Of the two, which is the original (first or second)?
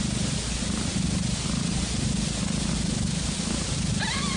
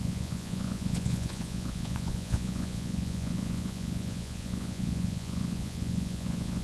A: first